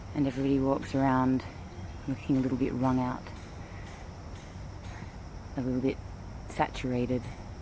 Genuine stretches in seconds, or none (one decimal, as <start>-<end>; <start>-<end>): 0.0-7.6